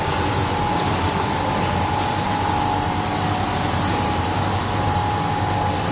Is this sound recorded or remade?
recorded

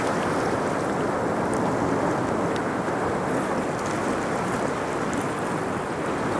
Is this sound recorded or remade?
recorded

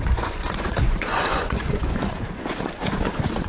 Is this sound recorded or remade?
remade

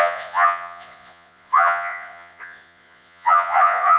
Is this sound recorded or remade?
remade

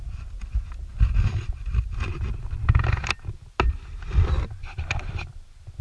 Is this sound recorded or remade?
recorded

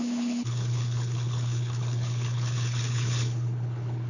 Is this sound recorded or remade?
remade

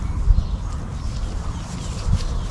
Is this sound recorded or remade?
recorded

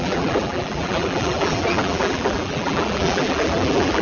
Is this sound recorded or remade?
remade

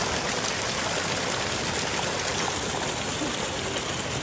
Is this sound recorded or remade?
recorded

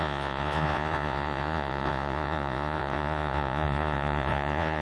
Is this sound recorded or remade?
remade